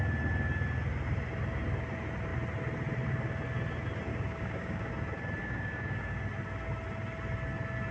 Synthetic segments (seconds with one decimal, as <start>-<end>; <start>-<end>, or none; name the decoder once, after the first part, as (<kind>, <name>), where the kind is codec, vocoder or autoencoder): 4.1-4.9 (codec, DAC); 5.4-6.2